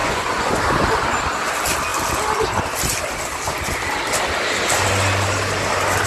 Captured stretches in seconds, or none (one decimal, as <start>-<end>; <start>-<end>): 0.6-6.1